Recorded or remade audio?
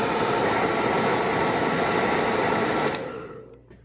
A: recorded